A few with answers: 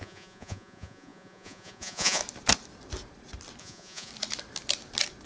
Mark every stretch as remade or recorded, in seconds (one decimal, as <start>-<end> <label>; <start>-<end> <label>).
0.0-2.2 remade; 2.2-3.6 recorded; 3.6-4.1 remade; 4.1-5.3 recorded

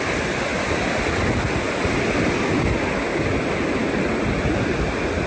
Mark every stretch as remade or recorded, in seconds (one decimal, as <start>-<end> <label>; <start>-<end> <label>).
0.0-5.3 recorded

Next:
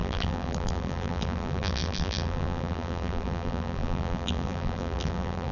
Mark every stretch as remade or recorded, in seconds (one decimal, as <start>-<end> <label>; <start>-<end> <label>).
0.0-5.5 remade